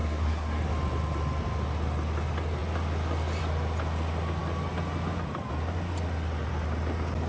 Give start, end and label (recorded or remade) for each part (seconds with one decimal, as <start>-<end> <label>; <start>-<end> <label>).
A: 0.0-0.6 remade; 0.6-7.3 recorded